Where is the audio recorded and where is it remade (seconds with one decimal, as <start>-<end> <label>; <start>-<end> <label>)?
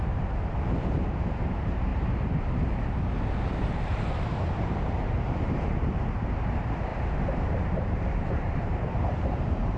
0.0-1.9 remade; 1.9-3.6 recorded; 3.6-9.8 remade